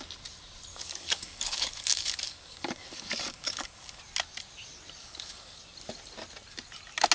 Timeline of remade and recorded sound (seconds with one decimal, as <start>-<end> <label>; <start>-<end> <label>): 0.0-0.7 recorded; 0.7-4.0 remade; 4.0-5.0 recorded; 5.0-5.6 remade; 5.6-7.1 recorded